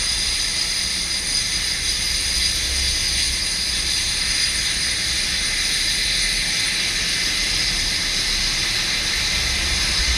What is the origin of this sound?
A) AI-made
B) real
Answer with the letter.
B